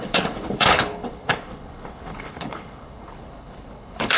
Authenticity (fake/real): fake